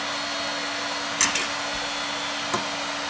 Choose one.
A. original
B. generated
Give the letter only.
A